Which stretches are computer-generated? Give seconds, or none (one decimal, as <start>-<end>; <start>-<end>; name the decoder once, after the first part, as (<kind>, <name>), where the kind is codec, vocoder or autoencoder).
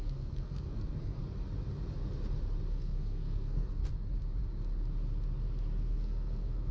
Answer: 0.0-1.2 (codec, SNAC); 2.7-3.8; 5.8-6.7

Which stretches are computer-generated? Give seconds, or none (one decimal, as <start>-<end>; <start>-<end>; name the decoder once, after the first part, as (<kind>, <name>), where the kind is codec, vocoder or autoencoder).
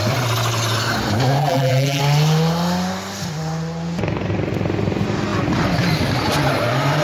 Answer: 1.4-2.0 (vocoder, BigVGAN v2)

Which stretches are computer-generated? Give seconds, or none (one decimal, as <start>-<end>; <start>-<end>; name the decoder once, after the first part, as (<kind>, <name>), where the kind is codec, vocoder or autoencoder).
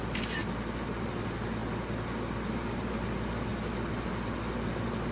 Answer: none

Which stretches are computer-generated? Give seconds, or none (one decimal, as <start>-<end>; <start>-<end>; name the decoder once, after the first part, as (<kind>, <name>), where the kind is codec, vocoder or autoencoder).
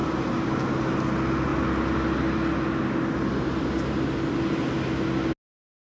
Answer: none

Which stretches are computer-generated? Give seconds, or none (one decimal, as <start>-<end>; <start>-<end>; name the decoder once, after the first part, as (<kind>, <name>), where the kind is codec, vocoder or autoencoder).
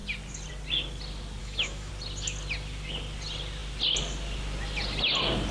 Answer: 1.4-1.9 (autoencoder, DAC-VAE)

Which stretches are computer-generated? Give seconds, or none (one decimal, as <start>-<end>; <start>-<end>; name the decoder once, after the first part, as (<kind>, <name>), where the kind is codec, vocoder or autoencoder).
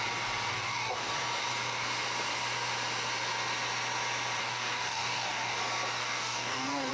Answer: 0.5-1.1 (codec, DAC); 4.4-5.6; 6.0-6.9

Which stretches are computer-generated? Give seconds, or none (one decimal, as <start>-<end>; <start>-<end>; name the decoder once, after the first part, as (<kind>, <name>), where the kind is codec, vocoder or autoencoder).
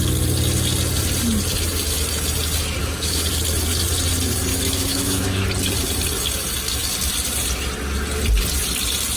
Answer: 2.8-3.3 (autoencoder, DAC-VAE); 4.5-5.4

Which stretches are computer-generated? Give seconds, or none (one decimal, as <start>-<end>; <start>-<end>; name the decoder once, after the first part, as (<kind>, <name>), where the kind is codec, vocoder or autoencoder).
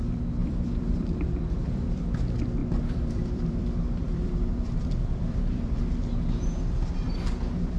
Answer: 0.4-2.0 (vocoder, BigVGAN v2); 2.6-5.8